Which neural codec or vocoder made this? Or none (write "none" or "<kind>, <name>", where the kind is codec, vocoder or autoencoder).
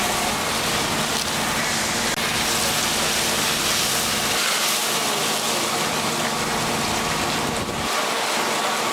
none